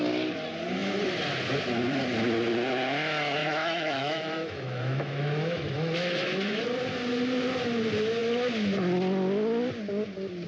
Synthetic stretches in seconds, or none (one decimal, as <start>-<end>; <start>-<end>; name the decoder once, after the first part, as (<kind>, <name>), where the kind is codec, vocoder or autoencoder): 3.4-6.6 (autoencoder, DAC-VAE)